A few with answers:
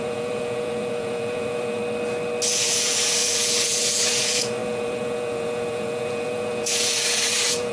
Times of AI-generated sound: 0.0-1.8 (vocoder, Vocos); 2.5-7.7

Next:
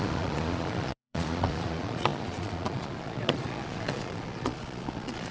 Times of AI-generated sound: 0.0-5.3 (vocoder, Vocos)

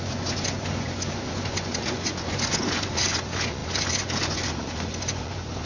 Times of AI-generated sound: 0.0-5.7 (vocoder, Vocos)

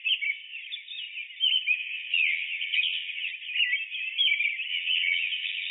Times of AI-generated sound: 1.8-3.3 (vocoder, Vocos); 4.7-5.7

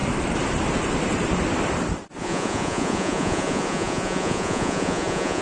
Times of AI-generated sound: 2.2-5.4 (vocoder, Vocos)

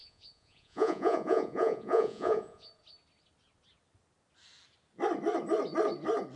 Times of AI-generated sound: 0.0-2.7 (vocoder, Vocos)

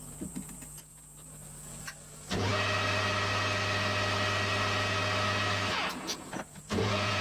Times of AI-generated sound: 0.0-2.5 (vocoder, Vocos); 5.7-7.2